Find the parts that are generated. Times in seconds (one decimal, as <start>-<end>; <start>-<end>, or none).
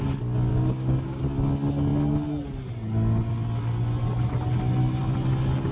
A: 0.5-1.2